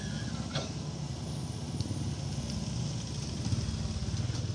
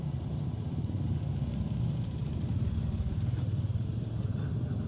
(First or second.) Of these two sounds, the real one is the first